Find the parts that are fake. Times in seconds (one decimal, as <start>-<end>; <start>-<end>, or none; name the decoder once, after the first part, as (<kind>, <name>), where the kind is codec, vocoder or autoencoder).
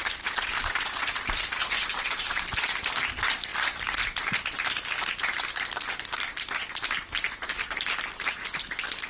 none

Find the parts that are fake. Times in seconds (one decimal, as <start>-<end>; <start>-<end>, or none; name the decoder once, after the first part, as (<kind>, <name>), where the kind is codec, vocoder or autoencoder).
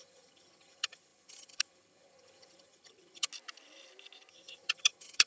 0.0-3.3 (vocoder, HiFi-GAN); 4.3-5.3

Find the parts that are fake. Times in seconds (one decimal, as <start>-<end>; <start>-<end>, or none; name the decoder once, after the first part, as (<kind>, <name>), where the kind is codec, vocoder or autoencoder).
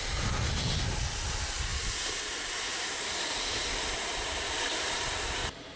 1.7-2.2 (vocoder, BigVGAN v2); 2.7-5.8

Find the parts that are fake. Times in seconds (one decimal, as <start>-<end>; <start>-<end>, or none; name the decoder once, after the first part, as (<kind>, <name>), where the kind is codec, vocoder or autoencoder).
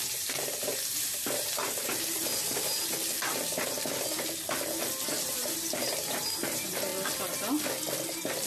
0.0-2.8 (vocoder, BigVGAN v2); 5.2-6.9; 8.1-8.5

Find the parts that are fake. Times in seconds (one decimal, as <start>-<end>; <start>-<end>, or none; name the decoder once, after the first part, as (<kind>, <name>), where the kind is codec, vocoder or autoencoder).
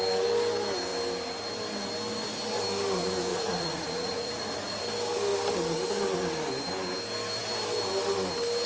3.3-4.8 (vocoder, Vocos)